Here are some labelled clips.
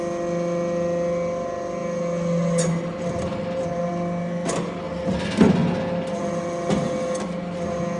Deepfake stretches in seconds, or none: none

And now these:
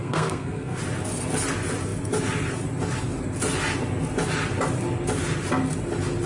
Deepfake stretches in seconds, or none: 0.0-0.8 (codec, SNAC)

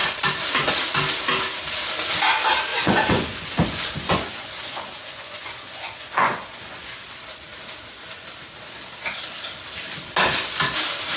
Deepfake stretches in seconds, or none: 2.7-6.9 (vocoder, Vocos)

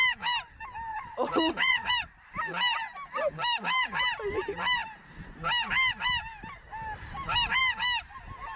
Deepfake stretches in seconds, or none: 0.9-1.9 (vocoder, Vocos)

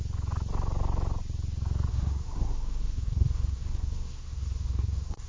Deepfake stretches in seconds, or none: 1.9-5.3 (codec, SNAC)